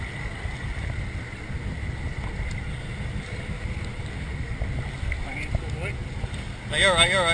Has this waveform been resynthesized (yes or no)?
no